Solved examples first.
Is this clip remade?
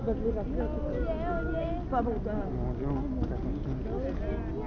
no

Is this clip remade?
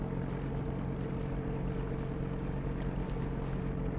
no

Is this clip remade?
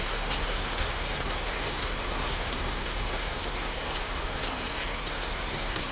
yes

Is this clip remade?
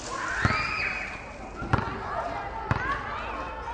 no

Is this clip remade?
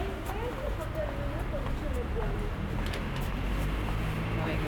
no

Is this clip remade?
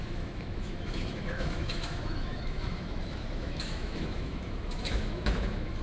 yes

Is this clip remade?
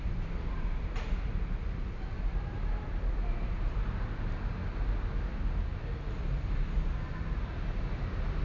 no